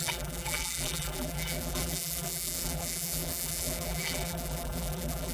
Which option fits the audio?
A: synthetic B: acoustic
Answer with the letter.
A